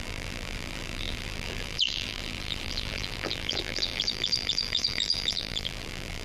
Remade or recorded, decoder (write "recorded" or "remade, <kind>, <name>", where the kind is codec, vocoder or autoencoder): remade, vocoder, BigVGAN v2